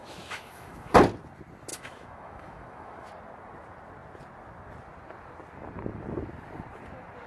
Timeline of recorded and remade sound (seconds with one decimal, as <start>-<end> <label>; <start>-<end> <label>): 0.0-0.9 remade; 0.9-1.7 recorded; 1.7-3.1 remade; 3.1-7.3 recorded